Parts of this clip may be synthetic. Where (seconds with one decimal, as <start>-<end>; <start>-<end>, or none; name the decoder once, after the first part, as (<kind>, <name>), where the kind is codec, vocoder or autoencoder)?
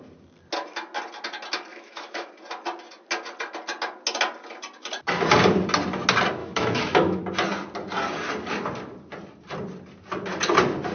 1.7-2.3 (autoencoder, DAC-VAE); 6.4-7.2